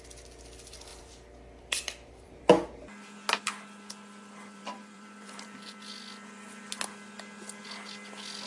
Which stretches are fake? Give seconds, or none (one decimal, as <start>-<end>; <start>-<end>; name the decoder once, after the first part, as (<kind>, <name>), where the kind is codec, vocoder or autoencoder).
0.9-2.4 (vocoder, BigVGAN v2); 4.5-5.9